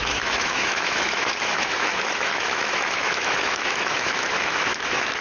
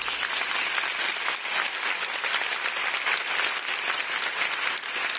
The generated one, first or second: first